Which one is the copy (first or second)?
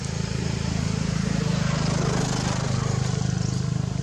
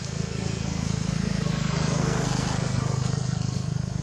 second